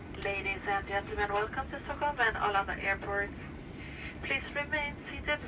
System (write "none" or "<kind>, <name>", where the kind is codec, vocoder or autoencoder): none